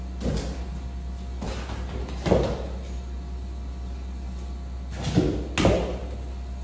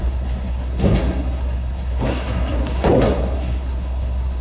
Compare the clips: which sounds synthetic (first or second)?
second